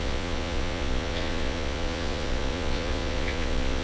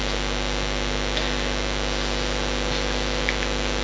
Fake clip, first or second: first